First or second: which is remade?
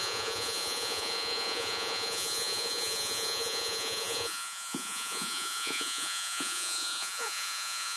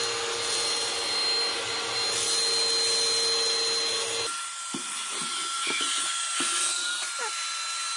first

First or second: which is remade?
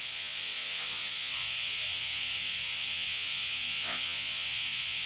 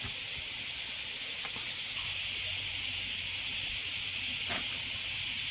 first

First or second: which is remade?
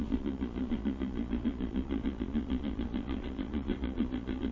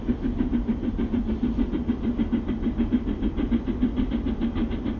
first